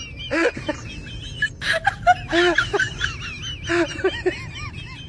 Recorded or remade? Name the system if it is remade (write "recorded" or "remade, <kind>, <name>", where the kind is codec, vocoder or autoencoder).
recorded